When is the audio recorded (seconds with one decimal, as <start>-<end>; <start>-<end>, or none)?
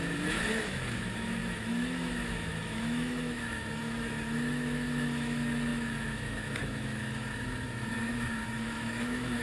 none